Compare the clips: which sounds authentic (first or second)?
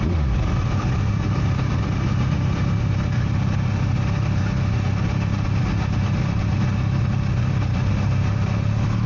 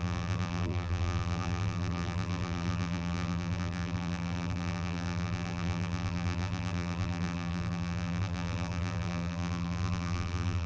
first